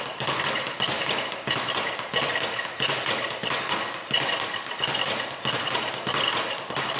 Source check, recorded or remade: recorded